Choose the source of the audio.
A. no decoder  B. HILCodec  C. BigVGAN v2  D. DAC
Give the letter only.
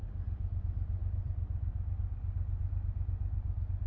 A